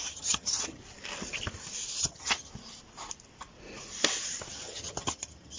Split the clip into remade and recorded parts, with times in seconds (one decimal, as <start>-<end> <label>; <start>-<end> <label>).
0.0-0.8 remade; 0.8-2.0 recorded; 2.0-2.5 remade; 2.5-4.5 recorded; 4.5-5.6 remade